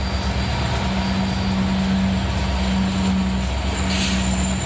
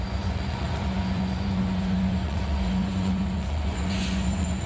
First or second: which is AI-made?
second